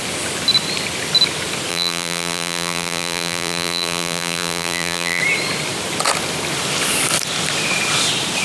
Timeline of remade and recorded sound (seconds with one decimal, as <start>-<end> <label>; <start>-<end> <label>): 0.0-1.7 recorded; 1.7-5.2 remade; 5.2-8.4 recorded